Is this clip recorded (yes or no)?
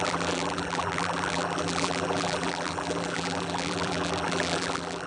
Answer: no